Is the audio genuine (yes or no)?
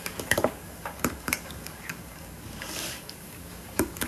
no